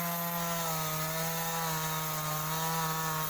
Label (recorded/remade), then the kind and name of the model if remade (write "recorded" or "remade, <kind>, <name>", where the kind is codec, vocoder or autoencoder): recorded